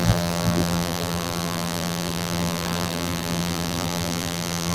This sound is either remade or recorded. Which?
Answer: remade